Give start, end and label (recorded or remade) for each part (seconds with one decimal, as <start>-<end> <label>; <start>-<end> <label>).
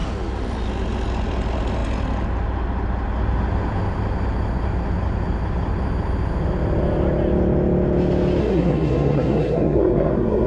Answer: 0.0-8.4 recorded; 8.4-10.5 remade